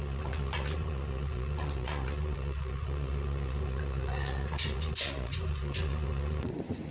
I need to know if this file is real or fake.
fake